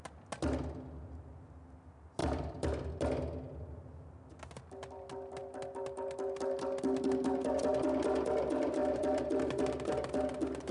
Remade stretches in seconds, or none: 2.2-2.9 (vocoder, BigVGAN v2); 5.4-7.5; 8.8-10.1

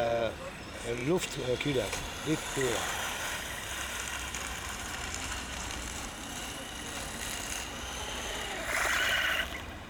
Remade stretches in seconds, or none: 0.0-1.0 (vocoder, BigVGAN v2); 1.6-6.4